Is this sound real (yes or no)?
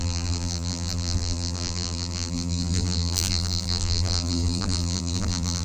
no